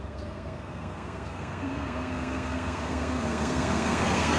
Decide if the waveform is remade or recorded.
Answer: remade